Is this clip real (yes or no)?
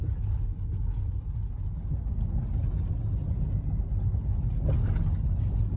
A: yes